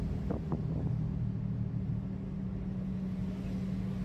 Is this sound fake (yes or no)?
no